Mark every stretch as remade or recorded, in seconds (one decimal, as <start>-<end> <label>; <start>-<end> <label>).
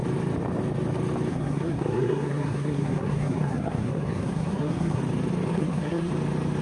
0.0-1.3 recorded; 1.3-5.0 remade; 5.0-5.5 recorded; 5.5-6.1 remade; 6.1-6.6 recorded